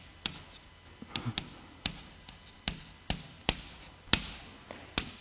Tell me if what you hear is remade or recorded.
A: recorded